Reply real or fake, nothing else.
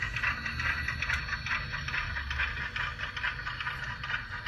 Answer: real